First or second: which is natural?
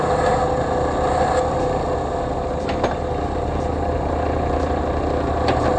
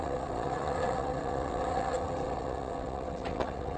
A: first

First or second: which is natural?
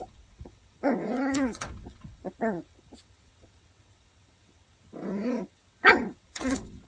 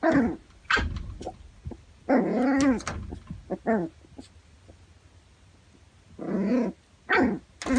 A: second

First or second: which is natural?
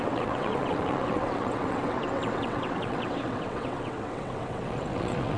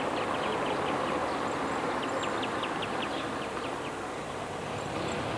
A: second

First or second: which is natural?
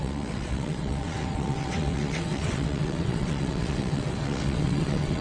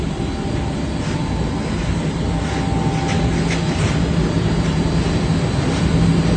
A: second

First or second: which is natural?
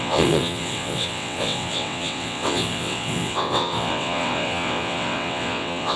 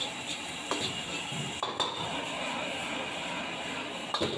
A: second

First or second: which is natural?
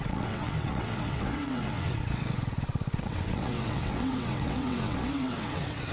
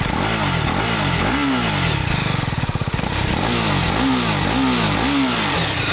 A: second